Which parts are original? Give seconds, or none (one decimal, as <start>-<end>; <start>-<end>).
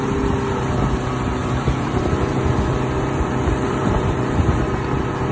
0.0-1.4; 4.6-5.3